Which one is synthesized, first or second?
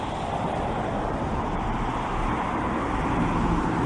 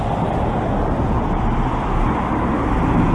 first